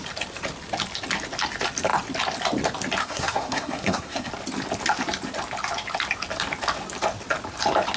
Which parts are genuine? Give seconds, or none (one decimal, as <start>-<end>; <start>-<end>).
0.0-3.0; 4.3-8.0